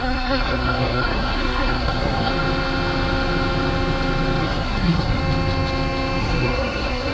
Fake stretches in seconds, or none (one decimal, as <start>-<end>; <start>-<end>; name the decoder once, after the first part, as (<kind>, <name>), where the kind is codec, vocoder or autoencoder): 0.0-2.3 (codec, SNAC); 4.4-5.2; 6.2-7.1